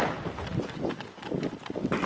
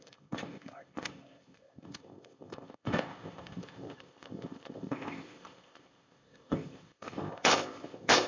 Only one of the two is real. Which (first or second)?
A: first